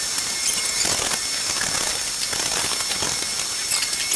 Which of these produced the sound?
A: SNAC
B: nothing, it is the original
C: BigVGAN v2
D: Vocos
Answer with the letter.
B